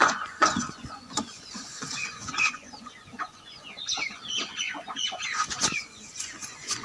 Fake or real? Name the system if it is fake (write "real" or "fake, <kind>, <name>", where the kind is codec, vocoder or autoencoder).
fake, vocoder, Vocos